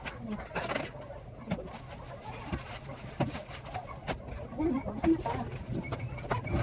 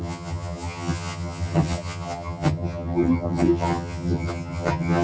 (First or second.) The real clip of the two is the first